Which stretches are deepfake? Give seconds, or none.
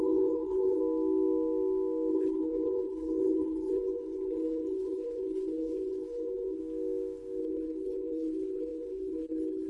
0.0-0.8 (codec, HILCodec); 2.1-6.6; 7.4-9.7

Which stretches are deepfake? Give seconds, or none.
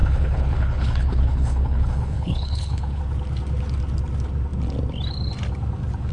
0.0-3.0 (codec, HILCodec)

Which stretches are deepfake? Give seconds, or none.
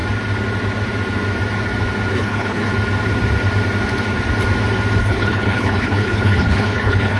2.1-2.7 (codec, HILCodec); 5.0-7.2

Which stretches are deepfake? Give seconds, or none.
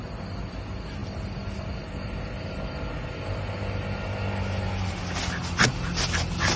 none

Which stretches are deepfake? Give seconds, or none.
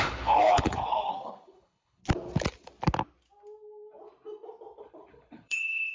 0.0-2.0 (codec, HILCodec); 4.8-5.9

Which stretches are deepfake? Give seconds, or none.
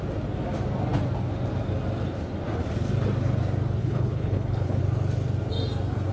3.8-4.8 (codec, HILCodec)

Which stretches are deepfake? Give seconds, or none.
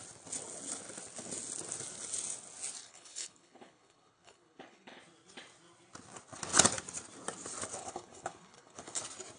2.8-5.0 (codec, HILCodec); 7.8-9.0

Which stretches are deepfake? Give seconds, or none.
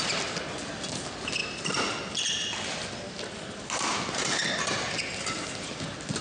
none